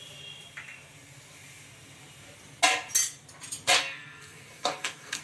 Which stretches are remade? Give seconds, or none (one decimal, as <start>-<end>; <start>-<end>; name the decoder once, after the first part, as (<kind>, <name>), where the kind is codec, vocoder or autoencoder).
3.8-5.2 (codec, SNAC)